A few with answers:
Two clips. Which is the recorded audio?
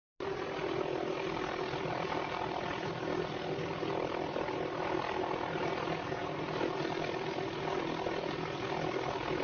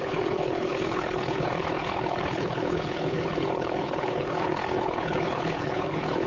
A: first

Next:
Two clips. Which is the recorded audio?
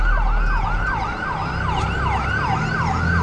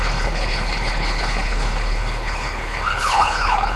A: first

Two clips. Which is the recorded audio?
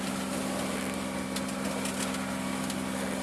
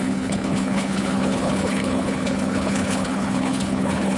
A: first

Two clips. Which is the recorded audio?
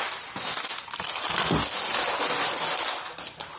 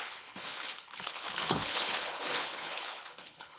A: first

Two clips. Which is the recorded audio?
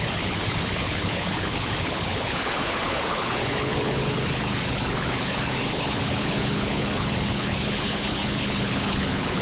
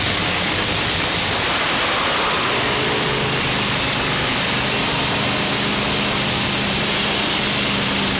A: second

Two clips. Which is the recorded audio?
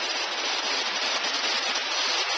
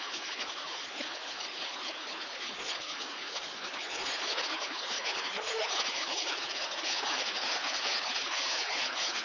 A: first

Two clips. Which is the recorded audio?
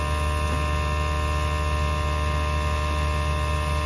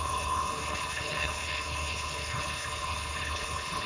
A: first